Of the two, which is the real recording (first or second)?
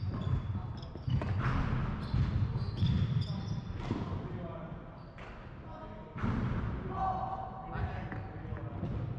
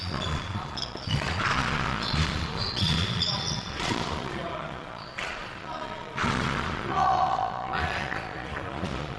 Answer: first